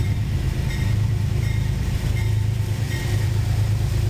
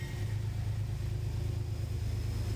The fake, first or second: first